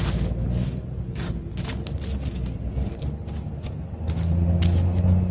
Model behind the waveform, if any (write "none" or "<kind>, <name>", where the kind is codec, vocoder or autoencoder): none